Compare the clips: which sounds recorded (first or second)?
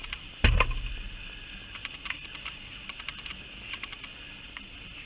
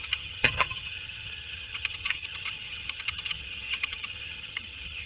first